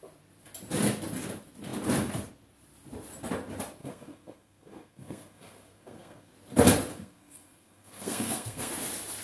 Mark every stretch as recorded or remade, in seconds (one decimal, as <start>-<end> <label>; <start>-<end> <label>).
0.0-3.8 recorded; 3.8-6.3 remade; 6.3-6.9 recorded; 6.9-8.7 remade; 8.7-9.2 recorded